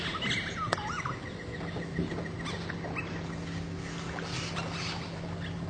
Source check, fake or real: real